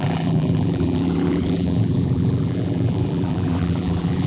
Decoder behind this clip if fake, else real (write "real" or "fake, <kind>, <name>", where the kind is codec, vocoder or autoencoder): fake, vocoder, BigVGAN v2